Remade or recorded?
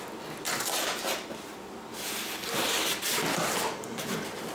recorded